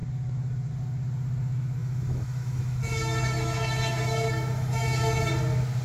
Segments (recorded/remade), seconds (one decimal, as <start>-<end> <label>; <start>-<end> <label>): 0.0-1.8 recorded; 1.8-5.3 remade; 5.3-5.8 recorded